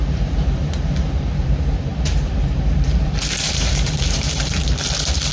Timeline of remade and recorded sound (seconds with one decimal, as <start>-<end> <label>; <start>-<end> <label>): 0.0-5.3 remade